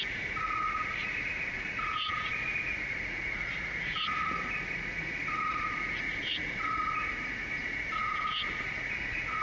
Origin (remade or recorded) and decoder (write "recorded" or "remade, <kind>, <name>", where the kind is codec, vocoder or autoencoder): remade, vocoder, Vocos